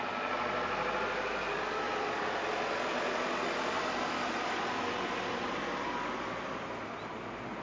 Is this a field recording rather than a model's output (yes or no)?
yes